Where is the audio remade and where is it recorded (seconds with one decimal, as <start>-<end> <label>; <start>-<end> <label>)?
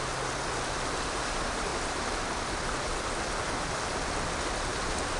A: 0.0-1.7 recorded; 1.7-4.8 remade; 4.8-5.2 recorded